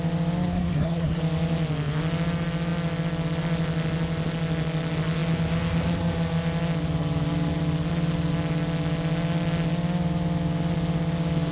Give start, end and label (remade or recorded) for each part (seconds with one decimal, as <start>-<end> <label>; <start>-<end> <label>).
0.0-0.5 recorded; 0.5-1.2 remade; 1.2-11.5 recorded